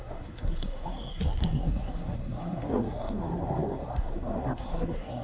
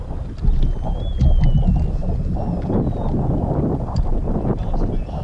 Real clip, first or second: second